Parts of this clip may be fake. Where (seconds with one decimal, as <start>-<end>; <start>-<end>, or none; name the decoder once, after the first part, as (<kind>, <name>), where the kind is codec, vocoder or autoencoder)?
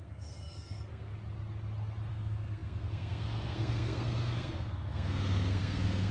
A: 0.0-1.1 (codec, SNAC); 2.1-6.1